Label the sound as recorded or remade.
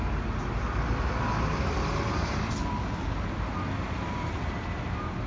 recorded